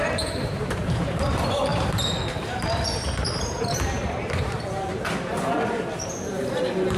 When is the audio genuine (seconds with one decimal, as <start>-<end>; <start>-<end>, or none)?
none